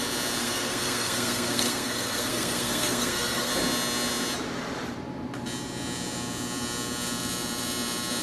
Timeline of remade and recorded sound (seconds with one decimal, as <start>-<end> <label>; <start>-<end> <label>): 0.0-0.4 recorded; 0.4-3.5 remade; 3.5-8.2 recorded